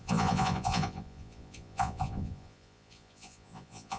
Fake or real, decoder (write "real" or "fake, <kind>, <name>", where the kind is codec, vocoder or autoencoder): fake, vocoder, Vocos